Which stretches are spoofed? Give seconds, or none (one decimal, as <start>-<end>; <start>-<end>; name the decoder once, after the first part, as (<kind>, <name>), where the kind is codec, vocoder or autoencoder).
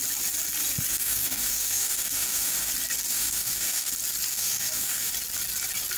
0.9-2.7 (codec, DAC); 3.1-3.9; 4.3-5.1